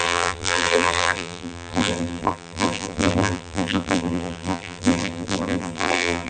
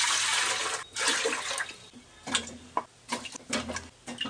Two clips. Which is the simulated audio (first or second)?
first